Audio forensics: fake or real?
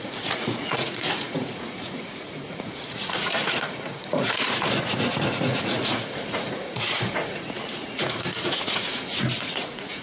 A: fake